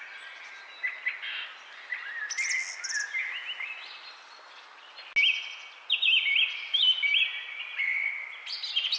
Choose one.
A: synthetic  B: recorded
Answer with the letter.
B